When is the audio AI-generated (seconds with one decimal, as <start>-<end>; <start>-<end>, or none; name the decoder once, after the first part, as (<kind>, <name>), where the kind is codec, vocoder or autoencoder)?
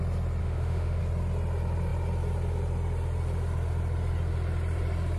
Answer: 0.4-1.0 (autoencoder, DAC-VAE)